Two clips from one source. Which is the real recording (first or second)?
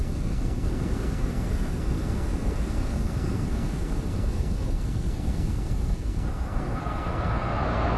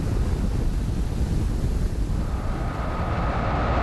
second